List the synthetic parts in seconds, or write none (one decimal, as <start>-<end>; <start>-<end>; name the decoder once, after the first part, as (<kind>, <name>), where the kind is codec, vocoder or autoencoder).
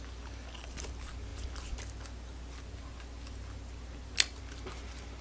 none